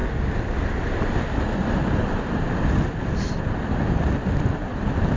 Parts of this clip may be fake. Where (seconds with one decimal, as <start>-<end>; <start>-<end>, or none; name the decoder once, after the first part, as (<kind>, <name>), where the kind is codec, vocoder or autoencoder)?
none